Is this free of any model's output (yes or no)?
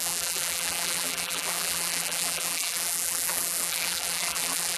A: no